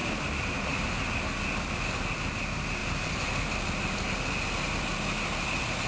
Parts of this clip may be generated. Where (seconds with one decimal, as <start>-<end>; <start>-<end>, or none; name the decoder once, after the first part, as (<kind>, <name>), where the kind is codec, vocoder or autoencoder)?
0.0-0.9 (vocoder, BigVGAN v2); 2.8-4.1